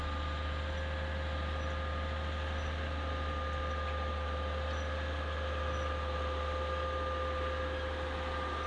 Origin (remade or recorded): recorded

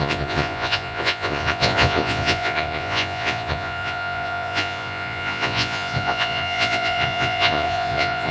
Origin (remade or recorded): remade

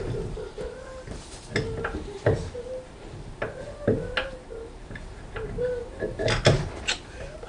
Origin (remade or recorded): recorded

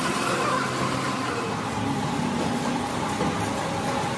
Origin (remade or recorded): recorded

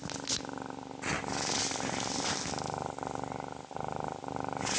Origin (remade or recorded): recorded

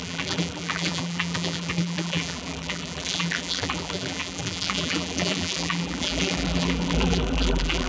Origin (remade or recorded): remade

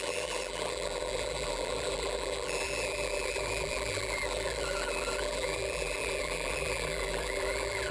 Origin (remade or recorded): remade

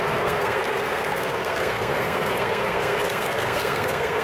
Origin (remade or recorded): remade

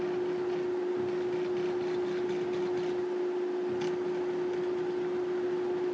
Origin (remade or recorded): recorded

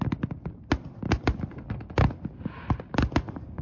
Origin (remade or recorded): recorded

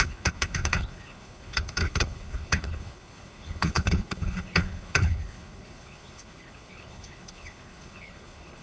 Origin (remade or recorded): remade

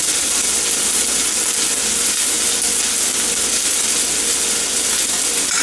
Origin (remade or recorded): recorded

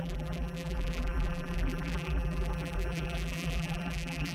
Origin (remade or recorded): remade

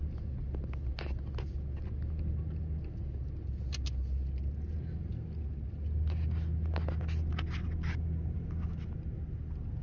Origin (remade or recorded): recorded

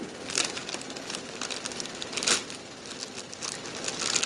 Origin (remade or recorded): recorded